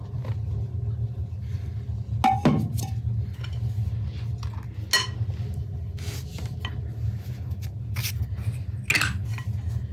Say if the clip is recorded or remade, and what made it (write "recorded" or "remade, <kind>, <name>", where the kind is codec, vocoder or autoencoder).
recorded